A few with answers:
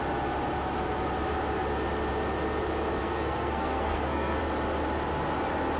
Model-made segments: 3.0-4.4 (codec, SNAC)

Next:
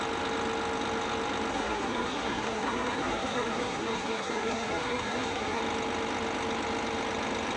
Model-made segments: 1.5-5.6 (codec, SNAC)

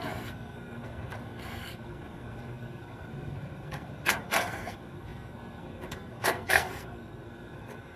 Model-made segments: 0.0-8.0 (codec, SNAC)

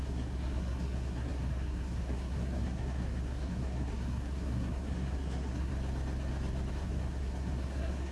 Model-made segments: 0.0-5.7 (codec, SNAC); 6.7-8.1

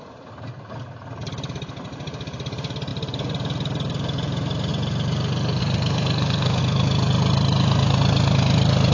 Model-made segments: 5.6-6.6 (codec, SNAC)